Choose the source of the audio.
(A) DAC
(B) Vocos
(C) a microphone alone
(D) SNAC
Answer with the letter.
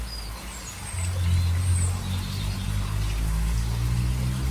C